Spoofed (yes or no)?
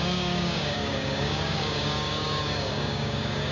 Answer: yes